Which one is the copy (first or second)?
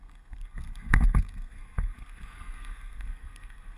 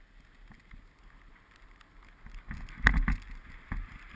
first